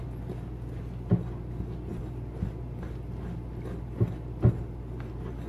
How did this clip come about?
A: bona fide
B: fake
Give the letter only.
A